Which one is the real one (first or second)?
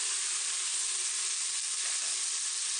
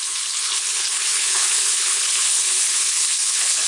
first